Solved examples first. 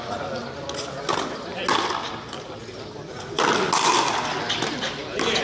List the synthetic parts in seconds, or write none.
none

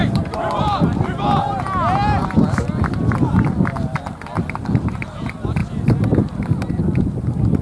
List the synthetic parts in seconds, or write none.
0.0-1.2 (vocoder, BigVGAN v2)

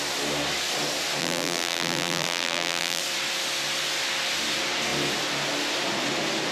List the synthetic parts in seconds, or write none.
1.2-3.0 (vocoder, BigVGAN v2)